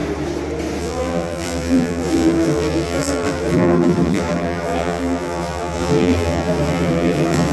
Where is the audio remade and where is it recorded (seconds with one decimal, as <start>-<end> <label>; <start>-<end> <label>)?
0.0-0.8 recorded; 0.8-7.5 remade